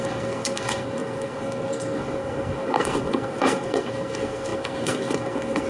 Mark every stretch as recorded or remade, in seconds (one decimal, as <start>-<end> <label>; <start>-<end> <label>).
0.0-5.7 remade